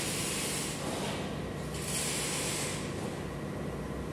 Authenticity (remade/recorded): recorded